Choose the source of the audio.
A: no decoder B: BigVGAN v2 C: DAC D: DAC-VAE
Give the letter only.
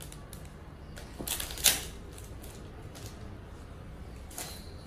A